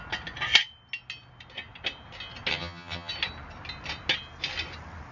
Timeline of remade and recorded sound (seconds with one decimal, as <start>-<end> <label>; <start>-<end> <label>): 0.0-2.5 recorded; 2.5-3.1 remade; 3.1-5.1 recorded

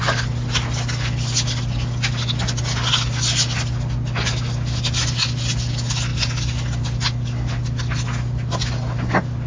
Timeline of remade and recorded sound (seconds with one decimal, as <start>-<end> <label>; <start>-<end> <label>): 0.0-9.5 recorded

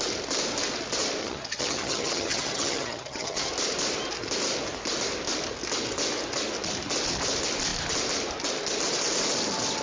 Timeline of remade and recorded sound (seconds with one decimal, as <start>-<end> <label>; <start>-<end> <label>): 0.0-1.2 recorded; 1.2-3.5 remade; 3.5-9.8 recorded

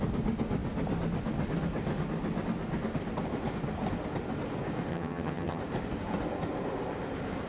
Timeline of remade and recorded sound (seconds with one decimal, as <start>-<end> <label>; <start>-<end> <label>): 0.0-4.9 recorded; 4.9-5.6 remade; 5.6-7.5 recorded

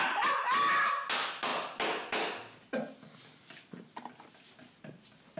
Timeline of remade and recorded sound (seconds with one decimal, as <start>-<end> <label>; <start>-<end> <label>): 0.0-5.4 recorded

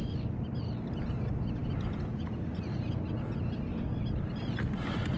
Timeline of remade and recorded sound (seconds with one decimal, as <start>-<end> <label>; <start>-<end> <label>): 0.0-5.2 recorded

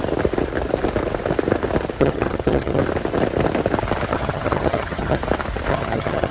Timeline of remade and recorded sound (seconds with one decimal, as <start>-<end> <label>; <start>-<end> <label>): 0.0-2.0 recorded; 2.0-2.8 remade; 2.8-4.1 recorded; 4.1-5.2 remade; 5.2-5.7 recorded; 5.7-6.3 remade